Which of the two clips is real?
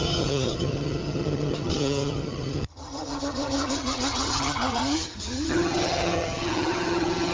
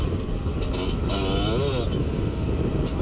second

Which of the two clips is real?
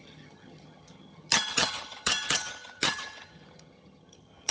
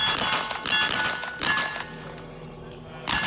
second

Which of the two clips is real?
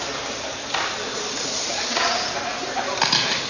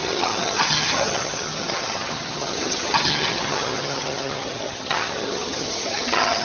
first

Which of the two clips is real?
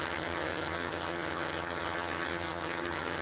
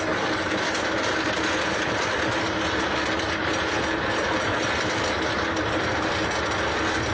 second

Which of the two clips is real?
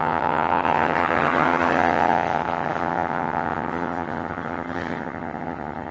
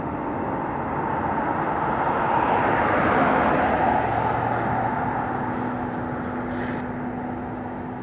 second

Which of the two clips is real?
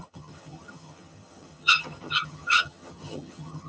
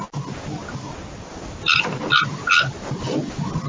second